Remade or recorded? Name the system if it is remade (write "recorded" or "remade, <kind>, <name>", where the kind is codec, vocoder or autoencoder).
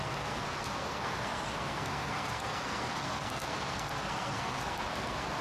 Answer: remade, codec, SNAC